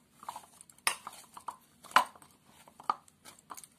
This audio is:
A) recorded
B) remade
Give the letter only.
A